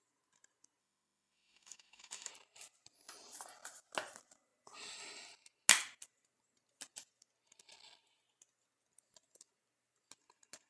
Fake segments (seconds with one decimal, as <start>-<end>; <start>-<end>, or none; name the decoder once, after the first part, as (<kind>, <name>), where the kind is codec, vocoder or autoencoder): 0.8-2.3 (autoencoder, DAC-VAE)